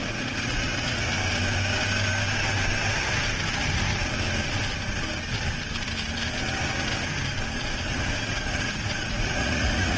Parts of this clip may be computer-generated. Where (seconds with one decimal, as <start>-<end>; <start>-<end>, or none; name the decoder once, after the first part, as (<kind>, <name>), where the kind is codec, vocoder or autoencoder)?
0.0-1.1 (vocoder, Vocos); 7.9-10.0